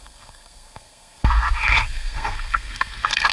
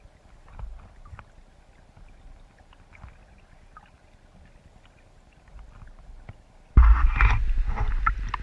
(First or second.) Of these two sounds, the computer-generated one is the first